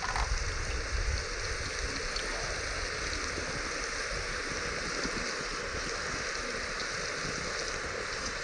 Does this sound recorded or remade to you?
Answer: recorded